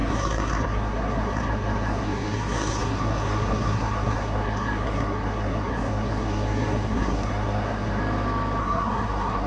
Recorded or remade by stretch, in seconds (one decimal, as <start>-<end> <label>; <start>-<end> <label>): 0.0-8.0 remade; 8.0-8.6 recorded; 8.6-9.5 remade